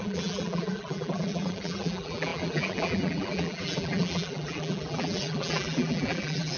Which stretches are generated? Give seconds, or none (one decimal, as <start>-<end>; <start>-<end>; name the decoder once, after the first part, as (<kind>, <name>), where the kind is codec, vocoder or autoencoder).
0.0-6.6 (vocoder, BigVGAN v2)